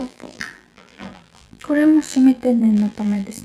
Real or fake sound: fake